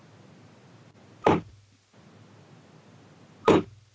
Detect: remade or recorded recorded